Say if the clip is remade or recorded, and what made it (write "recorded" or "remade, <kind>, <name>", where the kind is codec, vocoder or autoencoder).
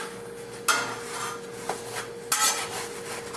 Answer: recorded